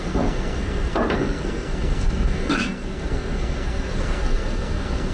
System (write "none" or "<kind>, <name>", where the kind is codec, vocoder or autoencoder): codec, SNAC